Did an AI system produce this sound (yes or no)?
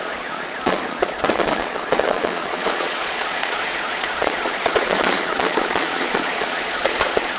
yes